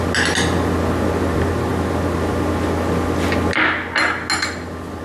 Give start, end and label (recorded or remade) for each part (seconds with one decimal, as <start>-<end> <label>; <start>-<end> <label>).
0.0-5.0 recorded